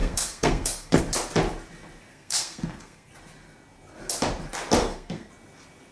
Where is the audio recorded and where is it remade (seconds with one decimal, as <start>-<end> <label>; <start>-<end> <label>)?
0.0-1.0 remade; 1.0-2.1 recorded; 2.1-3.1 remade; 3.1-4.8 recorded; 4.8-5.3 remade; 5.3-5.9 recorded